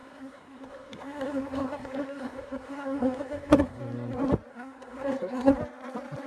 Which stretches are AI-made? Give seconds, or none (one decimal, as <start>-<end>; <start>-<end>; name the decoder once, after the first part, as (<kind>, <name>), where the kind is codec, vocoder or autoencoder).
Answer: 0.0-3.8 (codec, SNAC); 4.5-5.5